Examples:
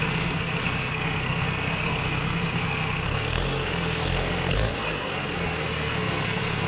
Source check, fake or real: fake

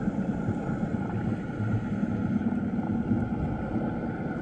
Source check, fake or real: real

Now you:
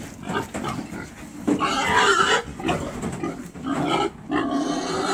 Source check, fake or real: real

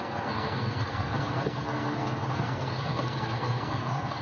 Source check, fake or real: fake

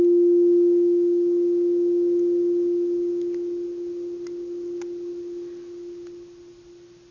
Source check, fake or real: real